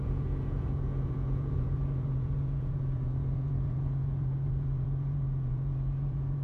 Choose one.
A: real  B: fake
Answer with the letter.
B